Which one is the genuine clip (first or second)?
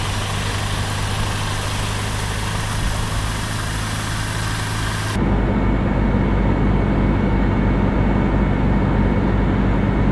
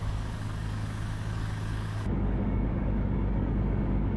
first